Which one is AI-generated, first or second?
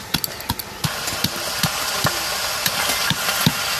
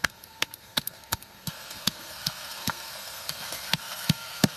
second